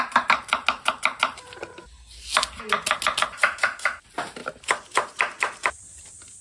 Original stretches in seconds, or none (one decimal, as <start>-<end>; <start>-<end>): 0.0-6.4